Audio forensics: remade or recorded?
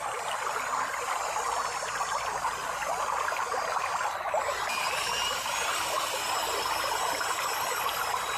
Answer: remade